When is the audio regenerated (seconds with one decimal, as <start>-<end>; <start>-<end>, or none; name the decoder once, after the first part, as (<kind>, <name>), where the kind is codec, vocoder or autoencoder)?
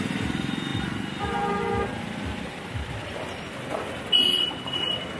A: none